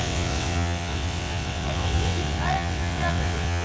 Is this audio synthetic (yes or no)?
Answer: yes